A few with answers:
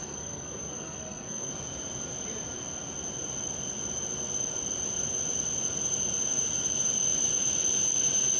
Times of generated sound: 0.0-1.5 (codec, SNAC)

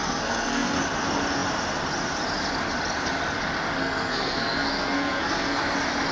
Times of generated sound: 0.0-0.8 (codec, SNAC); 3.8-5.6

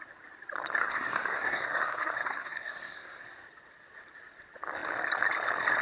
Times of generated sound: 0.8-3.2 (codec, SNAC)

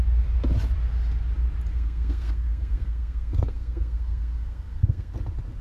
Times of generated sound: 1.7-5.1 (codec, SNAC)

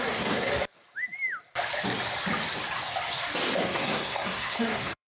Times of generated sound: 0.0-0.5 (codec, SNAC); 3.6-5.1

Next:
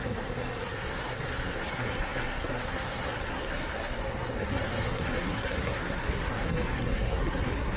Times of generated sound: 0.0-7.8 (codec, SNAC)